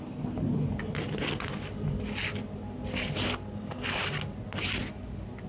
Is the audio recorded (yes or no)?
yes